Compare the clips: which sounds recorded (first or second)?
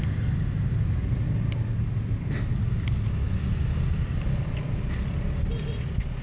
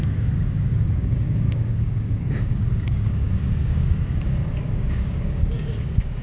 first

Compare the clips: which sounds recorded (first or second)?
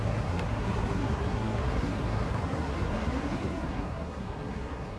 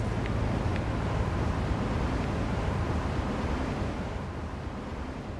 second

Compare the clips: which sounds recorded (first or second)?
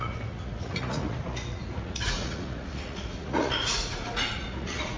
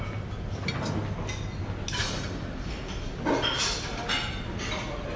second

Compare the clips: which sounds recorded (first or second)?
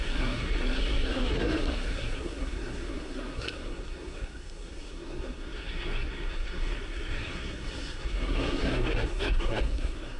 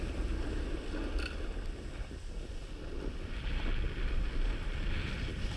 second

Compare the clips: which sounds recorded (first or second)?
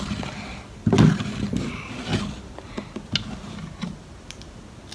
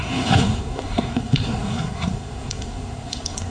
first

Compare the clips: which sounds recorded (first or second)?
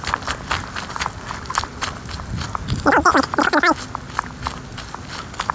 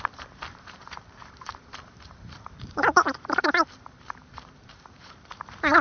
first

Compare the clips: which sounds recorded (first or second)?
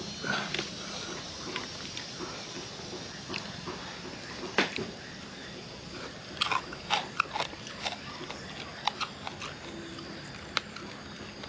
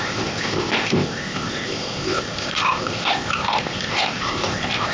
first